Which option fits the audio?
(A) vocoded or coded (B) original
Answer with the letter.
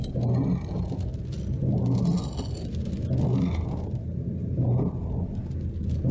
B